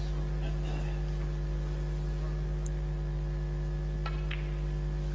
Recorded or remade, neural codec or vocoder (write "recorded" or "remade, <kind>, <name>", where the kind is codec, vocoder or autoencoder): recorded